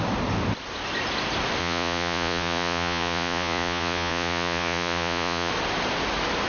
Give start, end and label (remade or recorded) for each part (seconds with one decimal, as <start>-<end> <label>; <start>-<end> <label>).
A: 0.0-1.6 recorded; 1.6-5.5 remade; 5.5-6.5 recorded